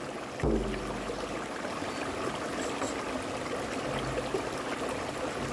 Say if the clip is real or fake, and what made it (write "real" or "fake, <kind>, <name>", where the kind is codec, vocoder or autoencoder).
real